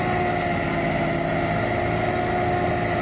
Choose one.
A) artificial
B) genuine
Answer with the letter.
B